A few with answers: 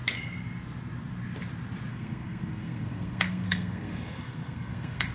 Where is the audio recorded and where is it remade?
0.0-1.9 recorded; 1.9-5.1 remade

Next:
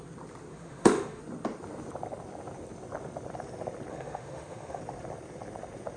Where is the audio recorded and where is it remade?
0.0-0.5 recorded; 0.5-1.2 remade; 1.2-3.9 recorded; 3.9-4.8 remade; 4.8-6.0 recorded

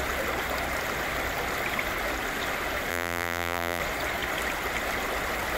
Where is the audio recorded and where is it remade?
0.0-2.9 recorded; 2.9-3.8 remade; 3.8-5.6 recorded

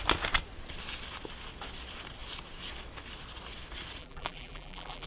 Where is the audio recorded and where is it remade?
0.0-4.0 recorded; 4.0-5.1 remade

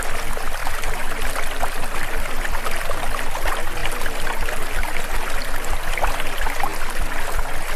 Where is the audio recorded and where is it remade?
0.0-7.8 recorded

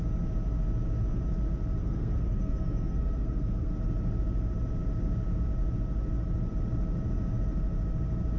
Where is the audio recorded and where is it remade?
0.0-1.8 recorded; 1.8-3.7 remade; 3.7-8.4 recorded

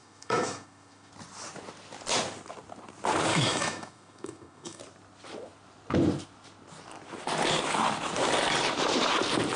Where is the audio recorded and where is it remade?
0.0-1.1 remade; 1.1-3.3 recorded; 3.3-4.8 remade; 4.8-9.6 recorded

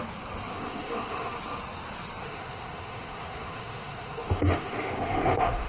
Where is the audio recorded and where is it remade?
0.0-0.5 recorded; 0.5-1.3 remade; 1.3-2.2 recorded; 2.2-5.7 remade